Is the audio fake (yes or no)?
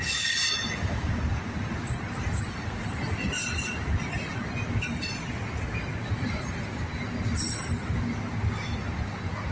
no